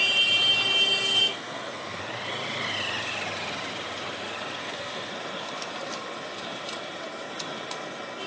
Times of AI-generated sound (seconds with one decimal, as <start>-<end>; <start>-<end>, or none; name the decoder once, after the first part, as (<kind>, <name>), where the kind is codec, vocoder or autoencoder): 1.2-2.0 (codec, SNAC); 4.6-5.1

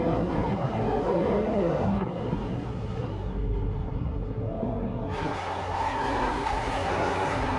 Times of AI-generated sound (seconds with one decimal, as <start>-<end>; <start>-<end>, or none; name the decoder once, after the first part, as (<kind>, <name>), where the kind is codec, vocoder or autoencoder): 0.0-7.6 (codec, SNAC)

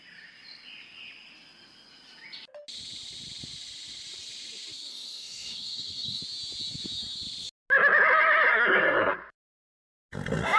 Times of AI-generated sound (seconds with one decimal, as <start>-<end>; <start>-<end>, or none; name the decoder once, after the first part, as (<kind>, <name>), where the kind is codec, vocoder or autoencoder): 4.9-6.2 (codec, SNAC); 8.5-9.1